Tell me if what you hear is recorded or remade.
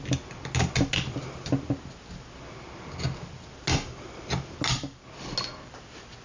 recorded